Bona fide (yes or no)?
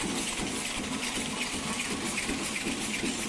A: yes